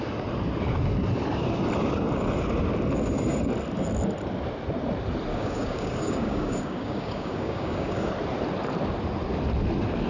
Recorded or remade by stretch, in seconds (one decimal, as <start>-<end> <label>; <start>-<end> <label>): 0.0-5.3 recorded; 5.3-8.1 remade; 8.1-10.1 recorded